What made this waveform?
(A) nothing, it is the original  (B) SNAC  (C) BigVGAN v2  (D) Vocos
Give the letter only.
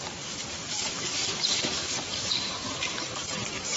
C